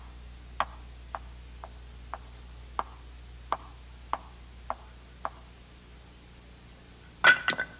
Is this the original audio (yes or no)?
yes